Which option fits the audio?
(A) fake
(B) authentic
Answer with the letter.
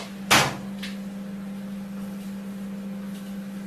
B